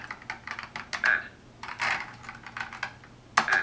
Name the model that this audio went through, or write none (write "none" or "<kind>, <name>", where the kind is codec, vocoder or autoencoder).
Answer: none